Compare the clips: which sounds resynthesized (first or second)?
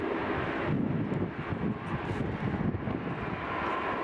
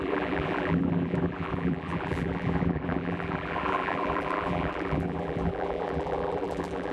second